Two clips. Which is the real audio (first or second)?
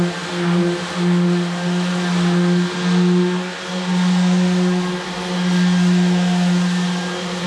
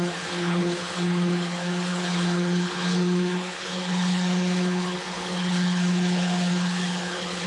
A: first